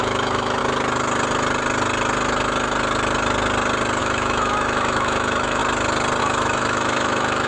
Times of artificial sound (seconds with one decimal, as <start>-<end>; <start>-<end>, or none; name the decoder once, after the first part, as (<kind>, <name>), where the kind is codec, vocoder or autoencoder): 0.0-0.6 (autoencoder, DAC-VAE); 4.0-5.6; 6.2-7.5